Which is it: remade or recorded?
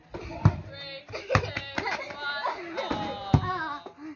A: recorded